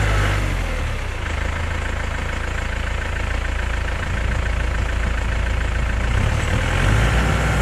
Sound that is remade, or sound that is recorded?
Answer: recorded